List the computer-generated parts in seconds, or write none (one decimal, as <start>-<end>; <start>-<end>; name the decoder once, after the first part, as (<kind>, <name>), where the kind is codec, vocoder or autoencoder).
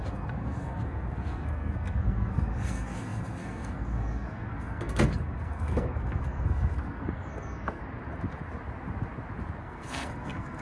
0.0-7.8 (codec, SNAC); 9.6-10.6